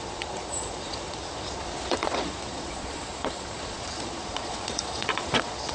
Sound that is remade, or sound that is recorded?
remade